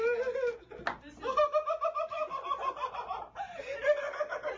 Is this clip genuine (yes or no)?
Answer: yes